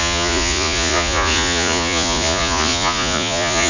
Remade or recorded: remade